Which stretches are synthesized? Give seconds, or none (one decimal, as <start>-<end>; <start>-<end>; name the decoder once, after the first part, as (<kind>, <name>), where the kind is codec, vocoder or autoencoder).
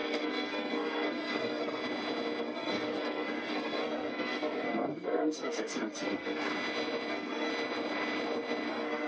0.0-1.8 (codec, SNAC); 2.4-6.5; 7.1-7.5; 8.7-9.1